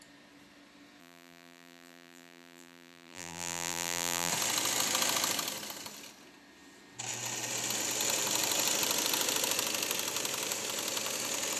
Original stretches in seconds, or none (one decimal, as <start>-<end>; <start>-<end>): 0.0-1.0; 4.3-11.6